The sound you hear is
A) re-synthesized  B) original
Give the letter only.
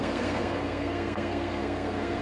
A